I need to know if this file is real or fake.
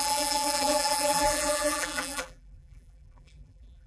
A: fake